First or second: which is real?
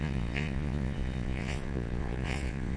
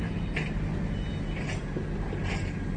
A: second